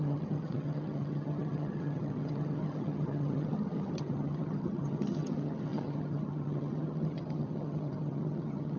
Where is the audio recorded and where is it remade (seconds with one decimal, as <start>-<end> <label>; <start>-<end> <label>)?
0.0-8.8 remade